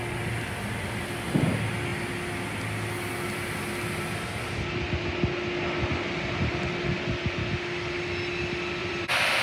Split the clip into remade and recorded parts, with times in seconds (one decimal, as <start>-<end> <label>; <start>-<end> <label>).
0.0-8.8 recorded; 8.8-9.4 remade